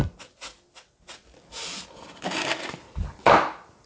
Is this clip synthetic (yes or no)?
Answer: no